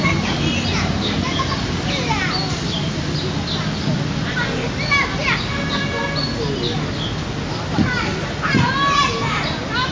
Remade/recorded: recorded